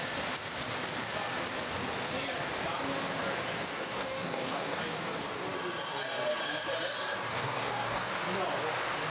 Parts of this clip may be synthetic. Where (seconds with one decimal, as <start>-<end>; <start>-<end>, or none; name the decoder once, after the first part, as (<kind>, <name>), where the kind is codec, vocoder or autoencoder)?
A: 3.7-4.8 (codec, DAC); 7.3-8.1